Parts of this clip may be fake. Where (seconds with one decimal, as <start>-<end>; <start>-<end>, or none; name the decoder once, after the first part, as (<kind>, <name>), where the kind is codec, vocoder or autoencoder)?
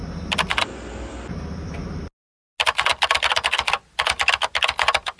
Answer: 0.0-1.9 (vocoder, BigVGAN v2)